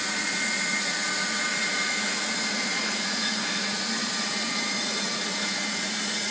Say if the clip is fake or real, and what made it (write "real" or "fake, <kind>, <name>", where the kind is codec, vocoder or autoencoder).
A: fake, vocoder, Vocos